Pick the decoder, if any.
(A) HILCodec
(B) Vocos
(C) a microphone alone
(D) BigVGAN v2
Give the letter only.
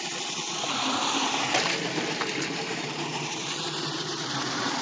C